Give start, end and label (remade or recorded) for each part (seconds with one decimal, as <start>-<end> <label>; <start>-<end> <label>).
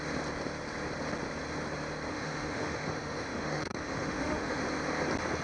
0.0-2.1 recorded; 2.1-4.6 remade; 4.6-5.4 recorded